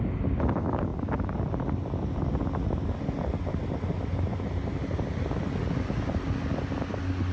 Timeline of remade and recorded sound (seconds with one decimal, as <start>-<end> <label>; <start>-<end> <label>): 0.0-7.3 recorded